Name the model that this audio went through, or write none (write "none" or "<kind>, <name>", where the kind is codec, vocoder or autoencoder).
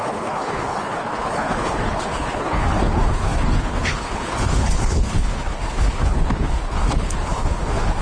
codec, HILCodec